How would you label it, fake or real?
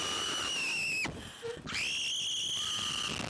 real